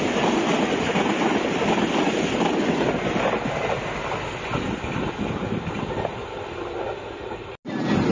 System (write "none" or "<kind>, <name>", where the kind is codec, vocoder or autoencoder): none